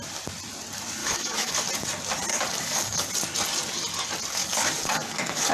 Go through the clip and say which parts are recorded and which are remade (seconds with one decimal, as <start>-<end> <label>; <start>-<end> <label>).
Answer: 0.0-1.0 recorded; 1.0-1.6 remade; 1.6-2.3 recorded; 2.3-3.1 remade; 3.1-4.4 recorded; 4.4-5.5 remade